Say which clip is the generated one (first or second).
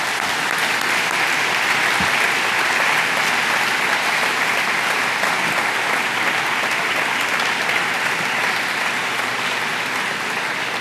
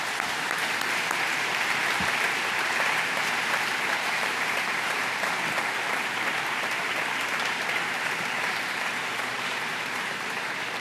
second